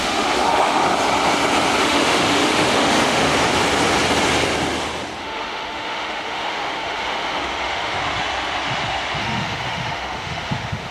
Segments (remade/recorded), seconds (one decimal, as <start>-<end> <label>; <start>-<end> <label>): 0.0-0.8 remade; 0.8-1.8 recorded; 1.8-3.3 remade; 3.3-5.2 recorded; 5.2-8.0 remade; 8.0-9.2 recorded; 9.2-10.9 remade